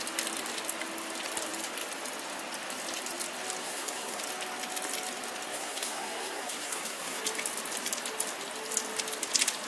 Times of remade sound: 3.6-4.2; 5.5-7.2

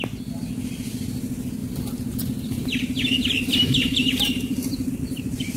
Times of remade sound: 1.6-5.0